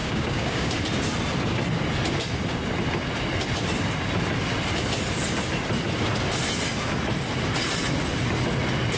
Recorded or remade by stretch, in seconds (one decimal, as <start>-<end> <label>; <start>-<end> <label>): 0.0-0.7 remade; 0.7-9.0 recorded